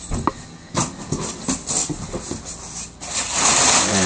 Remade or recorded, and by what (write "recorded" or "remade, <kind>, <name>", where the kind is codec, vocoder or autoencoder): recorded